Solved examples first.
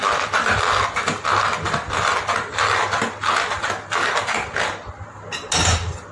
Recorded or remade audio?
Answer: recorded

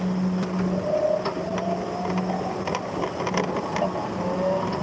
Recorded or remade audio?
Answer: recorded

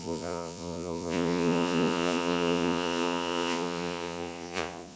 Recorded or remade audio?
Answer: remade